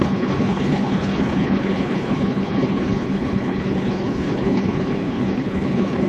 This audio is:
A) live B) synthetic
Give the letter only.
B